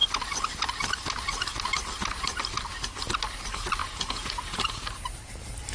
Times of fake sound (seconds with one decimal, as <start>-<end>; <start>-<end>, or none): 3.8-4.8